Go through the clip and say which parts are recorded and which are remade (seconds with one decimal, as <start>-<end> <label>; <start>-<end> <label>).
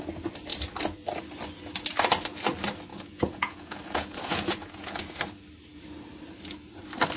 0.0-2.9 recorded; 2.9-4.9 remade; 4.9-7.2 recorded